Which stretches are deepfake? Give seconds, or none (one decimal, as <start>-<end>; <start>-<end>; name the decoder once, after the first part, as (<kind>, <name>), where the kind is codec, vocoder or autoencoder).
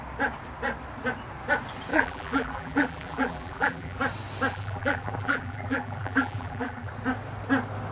1.9-4.0 (vocoder, BigVGAN v2); 4.5-6.9